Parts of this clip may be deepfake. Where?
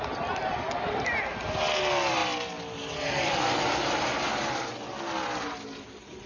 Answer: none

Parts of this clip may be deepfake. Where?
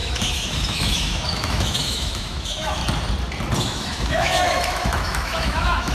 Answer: 0.0-2.8 (autoencoder, DAC-VAE); 3.6-5.9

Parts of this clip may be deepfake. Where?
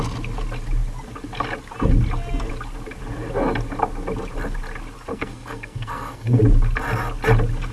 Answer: 5.1-6.4 (codec, SNAC)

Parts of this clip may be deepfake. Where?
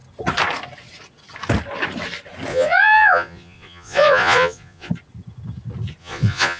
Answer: 2.5-4.9 (vocoder, Vocos); 6.0-6.6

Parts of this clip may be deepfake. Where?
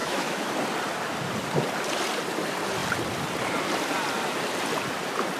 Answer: 0.0-0.5 (autoencoder, DAC-VAE)